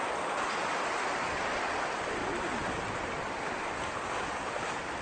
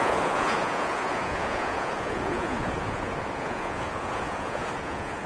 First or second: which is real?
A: first